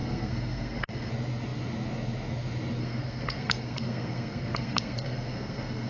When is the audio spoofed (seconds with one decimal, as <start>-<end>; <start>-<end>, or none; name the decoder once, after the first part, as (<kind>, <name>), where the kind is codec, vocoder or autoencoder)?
0.0-1.1 (codec, SNAC); 2.8-5.9

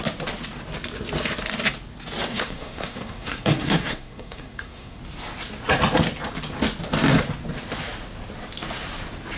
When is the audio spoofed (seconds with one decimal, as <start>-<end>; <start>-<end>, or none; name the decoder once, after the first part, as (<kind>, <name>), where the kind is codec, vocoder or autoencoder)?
2.3-5.0 (codec, SNAC)

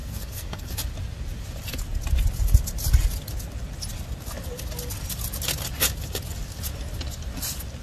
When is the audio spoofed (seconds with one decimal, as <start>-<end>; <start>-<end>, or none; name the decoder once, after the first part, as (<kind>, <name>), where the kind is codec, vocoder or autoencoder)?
0.0-0.7 (codec, SNAC)